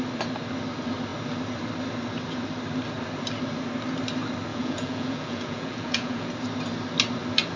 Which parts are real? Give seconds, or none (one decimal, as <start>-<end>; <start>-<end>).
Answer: 0.0-4.5; 6.3-7.6